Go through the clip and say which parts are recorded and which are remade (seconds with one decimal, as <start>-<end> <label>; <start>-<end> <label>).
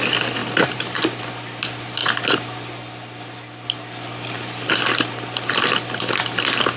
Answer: 0.0-0.4 recorded; 0.4-1.2 remade; 1.2-6.8 recorded